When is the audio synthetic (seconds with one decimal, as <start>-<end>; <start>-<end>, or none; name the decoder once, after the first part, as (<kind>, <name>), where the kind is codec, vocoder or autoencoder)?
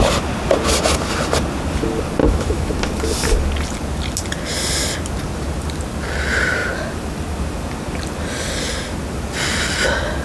2.2-2.7 (autoencoder, DAC-VAE)